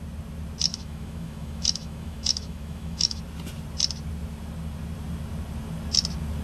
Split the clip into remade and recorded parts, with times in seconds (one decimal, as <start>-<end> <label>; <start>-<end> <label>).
0.0-0.7 recorded; 0.7-3.2 remade; 3.2-6.4 recorded